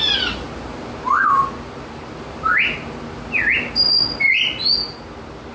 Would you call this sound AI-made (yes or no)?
no